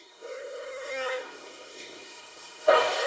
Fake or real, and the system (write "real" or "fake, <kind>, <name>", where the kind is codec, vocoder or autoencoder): fake, codec, SNAC